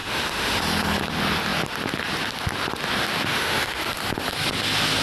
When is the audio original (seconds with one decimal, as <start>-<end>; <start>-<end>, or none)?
0.6-3.3; 3.8-5.0